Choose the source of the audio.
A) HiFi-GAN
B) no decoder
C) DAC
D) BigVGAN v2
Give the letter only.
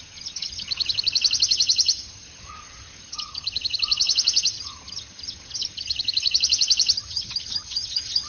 A